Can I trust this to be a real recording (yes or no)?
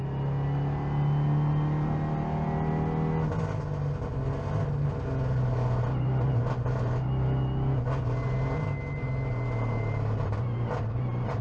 yes